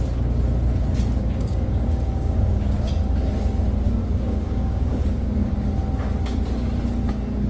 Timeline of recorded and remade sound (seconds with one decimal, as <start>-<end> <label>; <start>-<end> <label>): 0.0-1.2 recorded; 1.2-2.9 remade; 2.9-4.0 recorded; 4.0-5.5 remade; 5.5-7.5 recorded